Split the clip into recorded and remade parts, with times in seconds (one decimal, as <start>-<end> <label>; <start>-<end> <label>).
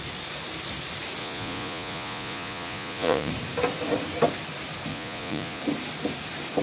0.0-1.2 recorded; 1.2-3.3 remade; 3.3-4.9 recorded; 4.9-5.6 remade; 5.6-6.6 recorded